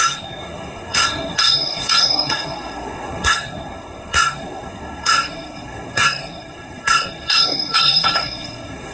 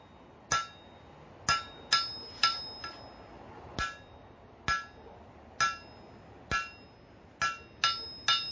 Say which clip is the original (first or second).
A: second